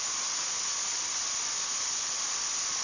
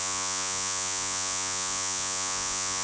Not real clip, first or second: second